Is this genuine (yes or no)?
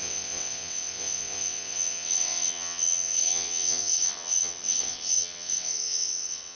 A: no